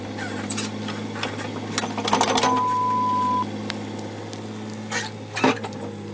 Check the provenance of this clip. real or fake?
real